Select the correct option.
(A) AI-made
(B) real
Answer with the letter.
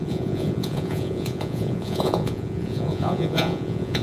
A